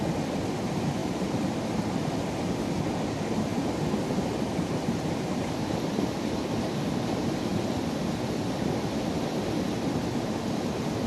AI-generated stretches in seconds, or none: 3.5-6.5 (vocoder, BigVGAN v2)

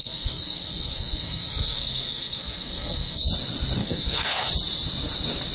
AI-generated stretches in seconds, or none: 0.0-3.3 (codec, SNAC); 3.8-4.5

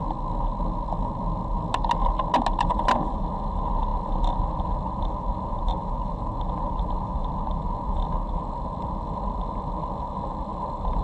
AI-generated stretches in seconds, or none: none

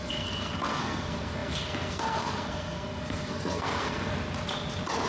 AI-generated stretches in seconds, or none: 0.0-4.1 (codec, SNAC)

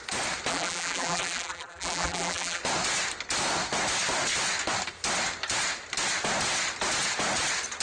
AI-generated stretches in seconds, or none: 0.5-2.6 (vocoder, BigVGAN v2)